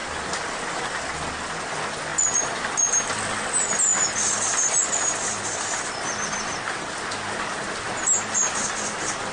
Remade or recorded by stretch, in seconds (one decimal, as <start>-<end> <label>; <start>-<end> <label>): 0.0-9.3 recorded